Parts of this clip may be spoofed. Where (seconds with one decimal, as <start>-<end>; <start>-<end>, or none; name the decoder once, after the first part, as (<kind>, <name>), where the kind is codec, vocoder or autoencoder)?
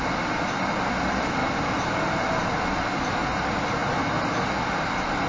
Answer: none